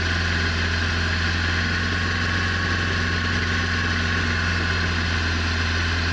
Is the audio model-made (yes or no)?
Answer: no